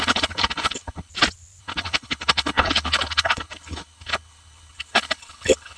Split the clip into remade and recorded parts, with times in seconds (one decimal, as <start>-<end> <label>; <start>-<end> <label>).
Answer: 0.0-1.1 remade; 1.1-1.6 recorded; 1.6-5.8 remade

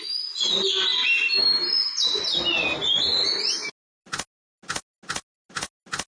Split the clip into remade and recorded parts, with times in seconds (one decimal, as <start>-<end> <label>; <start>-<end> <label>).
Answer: 0.0-6.1 recorded

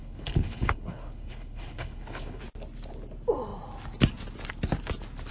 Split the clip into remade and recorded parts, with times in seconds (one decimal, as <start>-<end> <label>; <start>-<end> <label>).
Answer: 0.0-2.4 remade; 2.4-5.3 recorded